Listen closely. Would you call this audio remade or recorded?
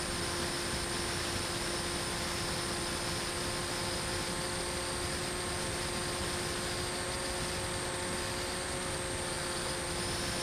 recorded